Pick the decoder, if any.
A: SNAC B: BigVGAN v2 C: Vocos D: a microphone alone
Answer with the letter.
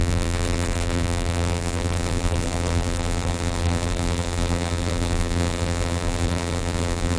B